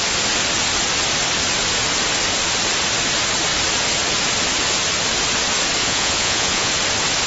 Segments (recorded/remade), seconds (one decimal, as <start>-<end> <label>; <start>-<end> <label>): 0.0-5.8 recorded; 5.8-6.7 remade; 6.7-7.3 recorded